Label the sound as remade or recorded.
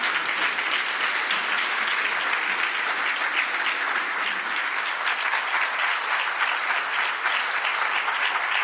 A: recorded